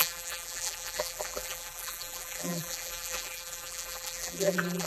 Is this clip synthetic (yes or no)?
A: yes